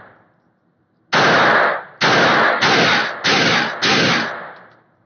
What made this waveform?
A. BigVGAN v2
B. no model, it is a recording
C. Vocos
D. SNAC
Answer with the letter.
B